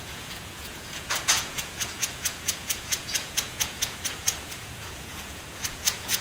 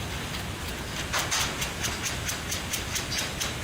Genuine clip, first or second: second